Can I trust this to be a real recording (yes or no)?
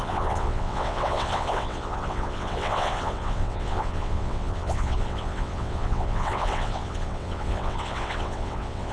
no